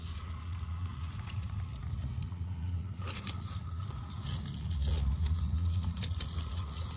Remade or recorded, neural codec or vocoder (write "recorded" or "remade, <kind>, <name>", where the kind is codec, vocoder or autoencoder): remade, vocoder, Vocos